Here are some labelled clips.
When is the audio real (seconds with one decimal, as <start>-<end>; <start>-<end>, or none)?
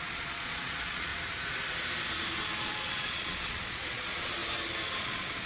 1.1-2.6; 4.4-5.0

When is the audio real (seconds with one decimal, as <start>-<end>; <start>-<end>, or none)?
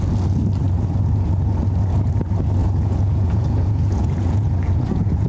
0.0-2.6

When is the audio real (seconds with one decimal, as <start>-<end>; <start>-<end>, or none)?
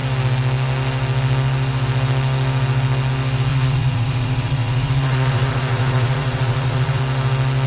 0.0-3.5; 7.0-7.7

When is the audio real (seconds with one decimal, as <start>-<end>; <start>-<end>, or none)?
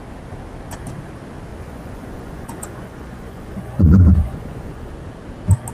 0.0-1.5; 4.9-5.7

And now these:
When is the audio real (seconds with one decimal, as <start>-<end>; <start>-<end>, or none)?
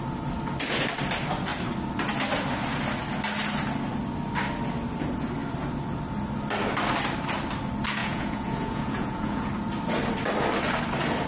0.0-8.0; 9.5-11.3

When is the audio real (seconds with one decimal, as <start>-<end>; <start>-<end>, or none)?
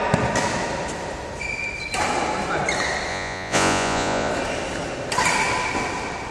0.0-3.1; 4.3-6.3